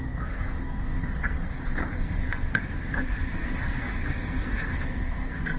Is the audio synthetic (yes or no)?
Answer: yes